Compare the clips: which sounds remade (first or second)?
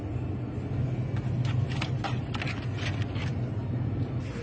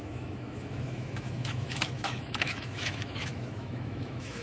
second